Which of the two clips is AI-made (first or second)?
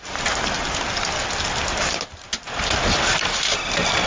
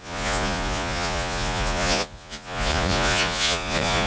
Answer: second